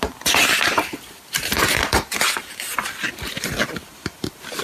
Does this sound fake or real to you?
real